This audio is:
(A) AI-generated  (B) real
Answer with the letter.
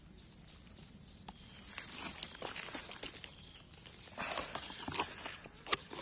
B